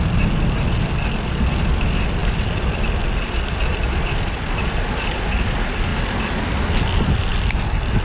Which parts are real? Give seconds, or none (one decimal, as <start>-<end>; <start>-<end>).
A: 0.0-8.0